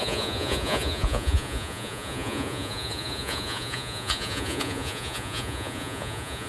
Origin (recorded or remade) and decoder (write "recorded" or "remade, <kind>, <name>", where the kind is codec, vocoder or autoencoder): remade, vocoder, Vocos